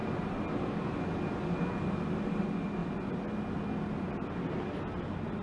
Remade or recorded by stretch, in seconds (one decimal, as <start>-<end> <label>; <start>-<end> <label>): 0.0-5.4 recorded